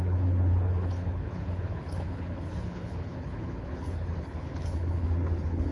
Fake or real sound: fake